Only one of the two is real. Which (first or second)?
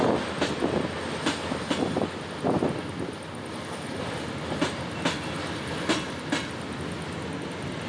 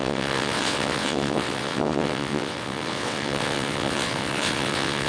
first